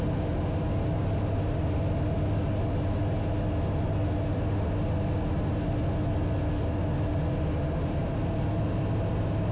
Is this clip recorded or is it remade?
recorded